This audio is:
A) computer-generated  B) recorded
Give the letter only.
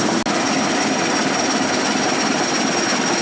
B